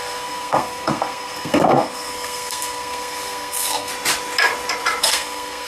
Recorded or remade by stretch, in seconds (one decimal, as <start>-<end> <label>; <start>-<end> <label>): 0.0-3.9 remade; 3.9-5.0 recorded; 5.0-5.7 remade